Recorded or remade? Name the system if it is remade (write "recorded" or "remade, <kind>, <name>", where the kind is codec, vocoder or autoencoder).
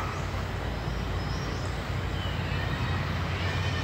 recorded